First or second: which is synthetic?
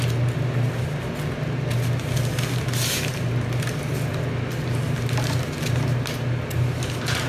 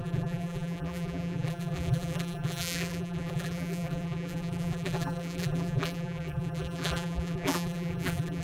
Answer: second